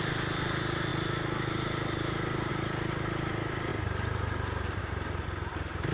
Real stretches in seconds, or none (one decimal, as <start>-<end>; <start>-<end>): 0.0-5.9